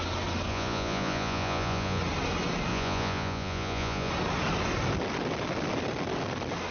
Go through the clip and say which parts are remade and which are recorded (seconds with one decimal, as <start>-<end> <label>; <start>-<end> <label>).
0.0-0.5 recorded; 0.5-2.0 remade; 2.0-2.7 recorded; 2.7-4.1 remade; 4.1-6.7 recorded